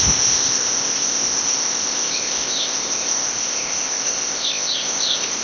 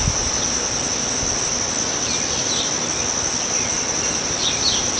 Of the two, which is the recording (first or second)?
second